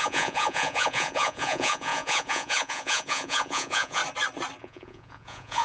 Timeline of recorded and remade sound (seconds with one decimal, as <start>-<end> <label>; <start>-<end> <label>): 0.0-4.0 remade; 4.0-4.6 recorded; 4.6-5.6 remade